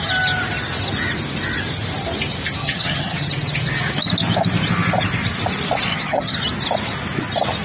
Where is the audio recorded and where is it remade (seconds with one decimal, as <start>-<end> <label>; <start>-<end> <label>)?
0.0-2.6 recorded; 2.6-3.3 remade; 3.3-5.9 recorded; 5.9-6.4 remade; 6.4-7.6 recorded